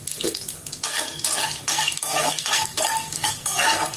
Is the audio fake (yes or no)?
yes